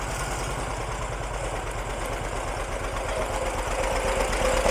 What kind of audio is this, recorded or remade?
recorded